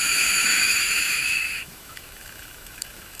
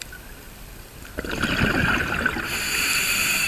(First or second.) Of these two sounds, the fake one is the first